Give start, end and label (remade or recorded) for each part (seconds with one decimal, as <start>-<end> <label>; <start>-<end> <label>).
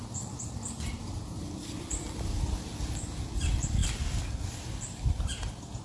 0.0-2.7 remade; 2.7-3.3 recorded; 3.3-3.8 remade; 3.8-5.8 recorded